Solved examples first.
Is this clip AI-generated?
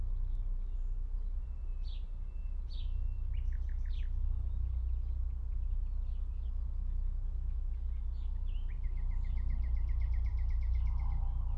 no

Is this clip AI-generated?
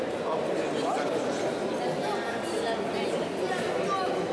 no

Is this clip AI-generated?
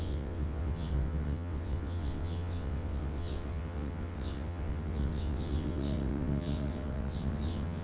yes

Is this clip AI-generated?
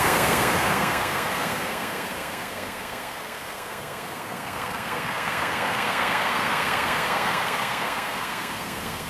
yes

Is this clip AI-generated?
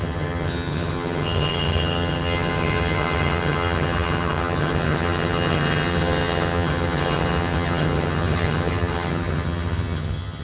yes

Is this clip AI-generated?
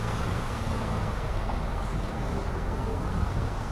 yes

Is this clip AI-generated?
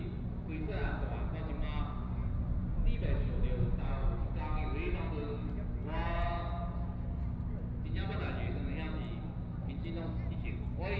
no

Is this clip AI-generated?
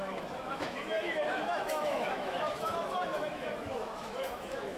yes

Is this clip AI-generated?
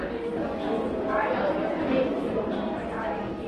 no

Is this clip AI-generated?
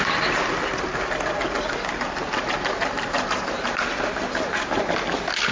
no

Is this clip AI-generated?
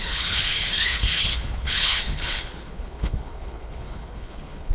yes